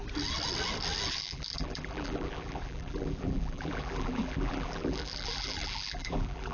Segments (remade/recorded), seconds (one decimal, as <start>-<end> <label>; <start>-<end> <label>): 0.0-1.2 recorded; 1.2-6.5 remade